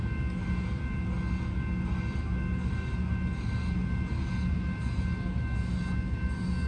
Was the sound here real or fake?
real